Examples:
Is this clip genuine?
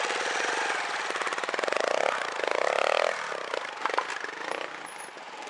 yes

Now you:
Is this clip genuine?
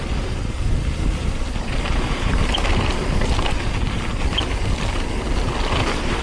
yes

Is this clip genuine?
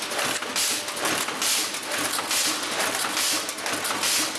yes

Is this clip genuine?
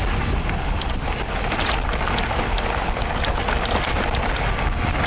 yes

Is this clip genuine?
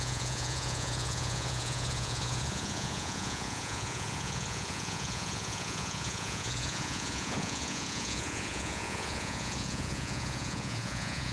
no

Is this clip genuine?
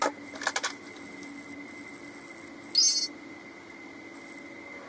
yes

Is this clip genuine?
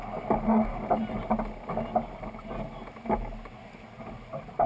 yes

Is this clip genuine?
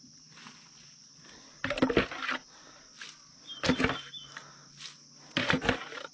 yes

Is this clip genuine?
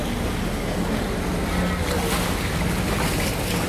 yes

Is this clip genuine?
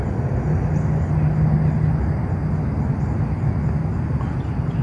yes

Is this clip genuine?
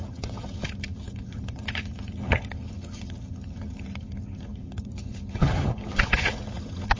no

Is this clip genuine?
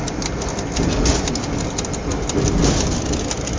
yes